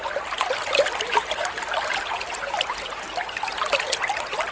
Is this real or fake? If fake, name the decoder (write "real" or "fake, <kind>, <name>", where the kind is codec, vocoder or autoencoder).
real